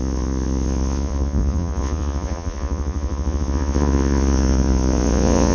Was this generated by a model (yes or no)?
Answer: yes